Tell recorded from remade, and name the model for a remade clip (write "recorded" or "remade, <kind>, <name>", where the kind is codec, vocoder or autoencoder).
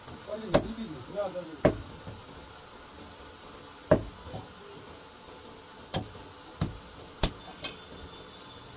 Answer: recorded